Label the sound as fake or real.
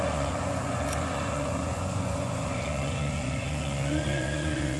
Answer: fake